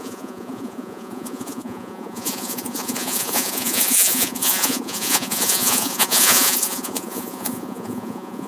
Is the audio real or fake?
fake